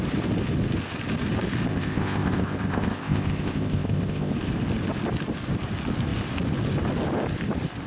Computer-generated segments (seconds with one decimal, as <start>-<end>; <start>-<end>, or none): 1.7-4.3